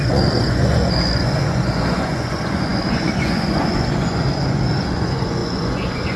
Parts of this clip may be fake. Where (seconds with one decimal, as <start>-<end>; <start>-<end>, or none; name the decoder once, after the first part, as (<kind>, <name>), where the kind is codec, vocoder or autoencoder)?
0.0-6.2 (vocoder, Vocos)